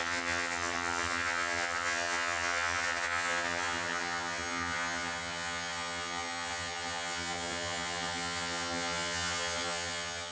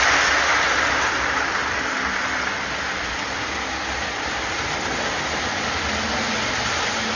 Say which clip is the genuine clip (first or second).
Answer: second